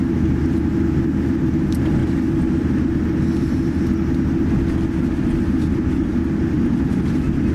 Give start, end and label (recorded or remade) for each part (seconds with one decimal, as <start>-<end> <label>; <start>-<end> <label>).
0.0-7.5 recorded